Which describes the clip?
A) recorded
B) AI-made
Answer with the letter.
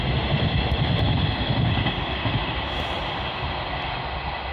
A